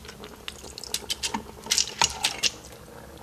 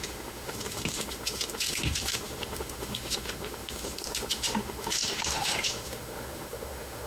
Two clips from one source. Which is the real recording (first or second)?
first